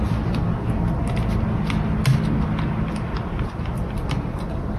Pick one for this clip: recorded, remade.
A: recorded